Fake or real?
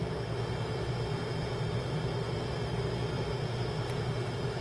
real